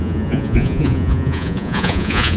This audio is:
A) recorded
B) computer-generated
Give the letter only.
B